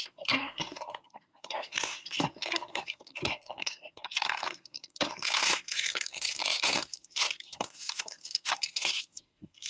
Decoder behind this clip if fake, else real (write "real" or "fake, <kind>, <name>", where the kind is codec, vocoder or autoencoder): fake, codec, SNAC